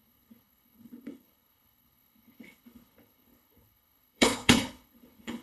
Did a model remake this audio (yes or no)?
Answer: yes